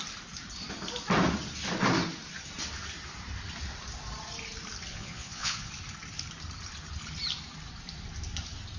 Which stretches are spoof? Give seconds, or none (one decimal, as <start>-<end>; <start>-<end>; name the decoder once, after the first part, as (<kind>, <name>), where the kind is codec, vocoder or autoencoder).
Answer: 4.9-5.7 (vocoder, Vocos)